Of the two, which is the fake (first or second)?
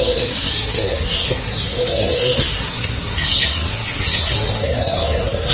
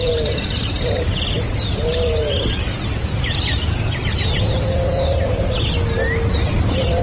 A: first